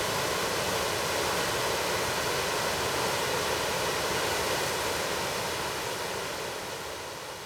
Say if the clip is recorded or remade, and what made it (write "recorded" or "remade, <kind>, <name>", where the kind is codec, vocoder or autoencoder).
recorded